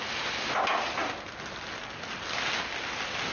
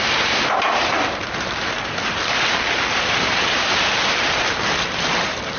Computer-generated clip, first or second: second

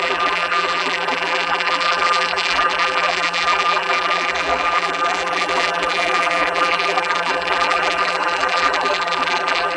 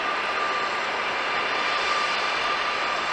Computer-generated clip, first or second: first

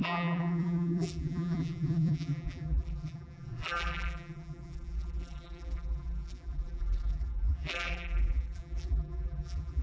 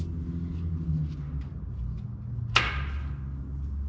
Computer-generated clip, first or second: first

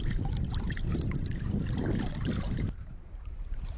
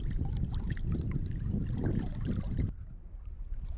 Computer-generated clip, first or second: first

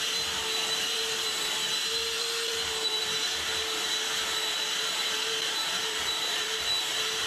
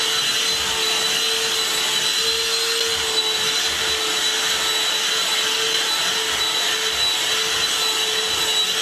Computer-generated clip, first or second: first